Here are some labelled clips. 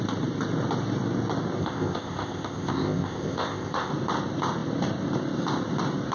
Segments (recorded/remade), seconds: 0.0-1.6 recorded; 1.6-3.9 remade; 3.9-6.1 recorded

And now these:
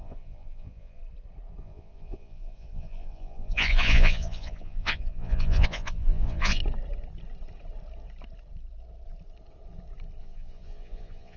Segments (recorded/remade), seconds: 0.0-1.0 remade; 1.0-1.6 recorded; 1.6-6.6 remade; 6.6-10.2 recorded; 10.2-11.4 remade